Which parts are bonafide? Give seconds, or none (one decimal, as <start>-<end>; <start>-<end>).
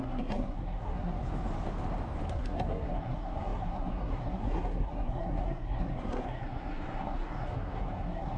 1.1-2.3